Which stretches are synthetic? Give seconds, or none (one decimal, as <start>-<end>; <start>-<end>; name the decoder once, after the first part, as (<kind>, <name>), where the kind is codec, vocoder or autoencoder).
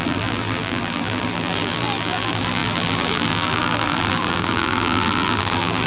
0.0-5.9 (vocoder, BigVGAN v2)